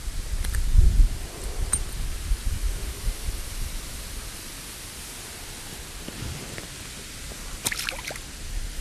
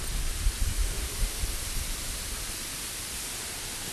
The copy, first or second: second